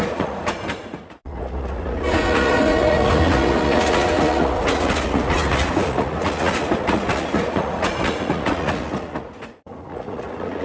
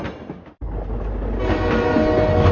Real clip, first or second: second